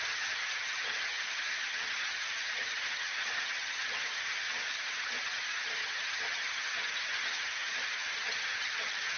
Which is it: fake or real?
fake